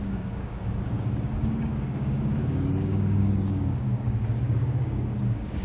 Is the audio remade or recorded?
remade